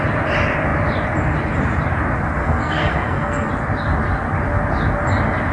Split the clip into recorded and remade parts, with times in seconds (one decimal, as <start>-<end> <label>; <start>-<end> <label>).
0.0-2.4 recorded; 2.4-3.5 remade; 3.5-5.5 recorded